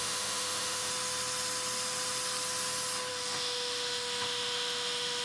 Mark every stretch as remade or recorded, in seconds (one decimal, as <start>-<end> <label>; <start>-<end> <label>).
0.0-0.9 remade; 0.9-3.1 recorded; 3.1-5.2 remade